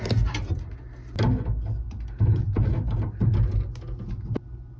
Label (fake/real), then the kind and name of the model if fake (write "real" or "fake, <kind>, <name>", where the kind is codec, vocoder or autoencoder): real